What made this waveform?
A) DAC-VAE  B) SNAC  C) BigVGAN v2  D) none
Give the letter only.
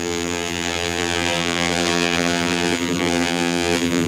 C